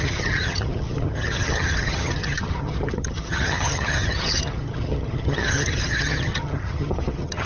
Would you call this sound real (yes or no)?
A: no